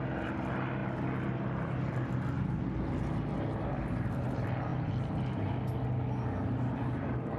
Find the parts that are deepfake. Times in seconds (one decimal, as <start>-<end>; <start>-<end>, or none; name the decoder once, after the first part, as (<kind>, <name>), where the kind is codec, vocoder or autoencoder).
none